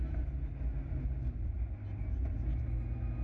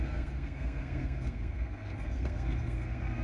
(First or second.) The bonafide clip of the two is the first